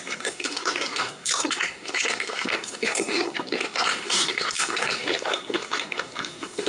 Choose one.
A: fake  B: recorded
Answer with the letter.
A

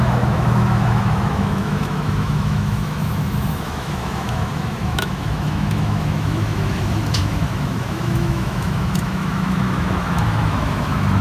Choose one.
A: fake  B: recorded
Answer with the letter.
A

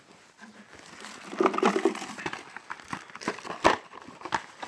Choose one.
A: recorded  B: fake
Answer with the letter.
A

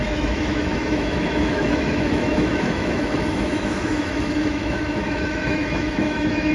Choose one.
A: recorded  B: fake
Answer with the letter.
B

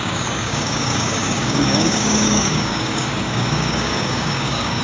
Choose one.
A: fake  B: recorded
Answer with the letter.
A